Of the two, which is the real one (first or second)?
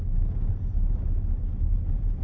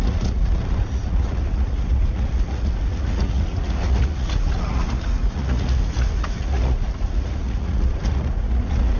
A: first